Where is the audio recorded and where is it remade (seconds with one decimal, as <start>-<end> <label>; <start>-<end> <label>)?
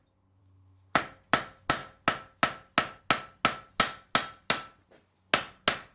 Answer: 0.0-0.4 recorded; 0.4-1.0 remade; 1.0-5.9 recorded